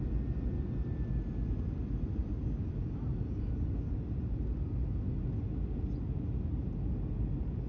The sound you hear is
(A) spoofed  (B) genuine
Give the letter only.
B